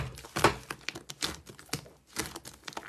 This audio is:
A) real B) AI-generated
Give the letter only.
A